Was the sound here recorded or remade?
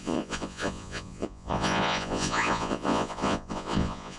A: remade